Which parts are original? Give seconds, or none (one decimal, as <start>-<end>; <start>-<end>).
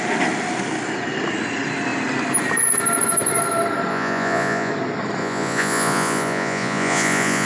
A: 0.0-3.9; 4.7-5.2